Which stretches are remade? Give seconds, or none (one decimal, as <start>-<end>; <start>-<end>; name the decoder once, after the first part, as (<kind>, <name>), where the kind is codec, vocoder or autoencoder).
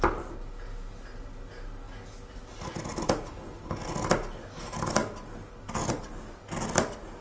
none